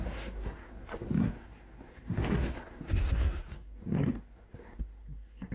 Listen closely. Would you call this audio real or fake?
fake